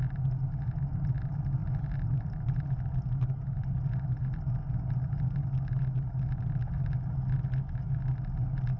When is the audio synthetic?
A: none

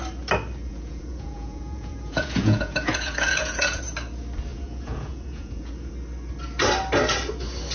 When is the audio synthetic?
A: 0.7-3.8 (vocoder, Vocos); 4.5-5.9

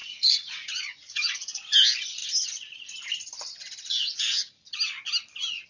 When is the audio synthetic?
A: 0.0-1.6 (vocoder, Vocos)

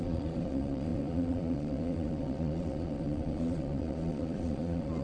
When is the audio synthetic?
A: 0.0-5.0 (vocoder, Vocos)

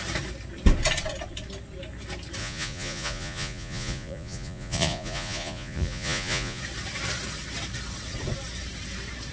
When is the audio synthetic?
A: 2.4-6.6 (vocoder, Vocos)

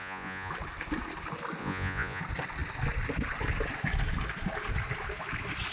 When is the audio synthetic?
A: 0.0-0.5 (vocoder, Vocos); 1.6-2.2

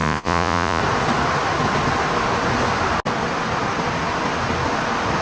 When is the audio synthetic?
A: 0.0-0.8 (vocoder, Vocos)